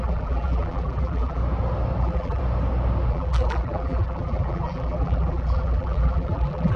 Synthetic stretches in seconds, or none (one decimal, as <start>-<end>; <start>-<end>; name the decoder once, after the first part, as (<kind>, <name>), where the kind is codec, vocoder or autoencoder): 0.0-1.4 (vocoder, BigVGAN v2); 2.0-2.4; 3.1-6.8